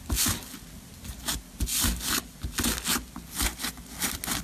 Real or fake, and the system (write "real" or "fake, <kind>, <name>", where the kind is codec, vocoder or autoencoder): real